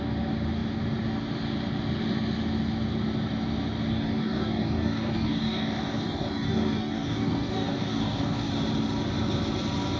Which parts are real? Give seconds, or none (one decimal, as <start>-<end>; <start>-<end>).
0.0-3.9; 8.5-10.0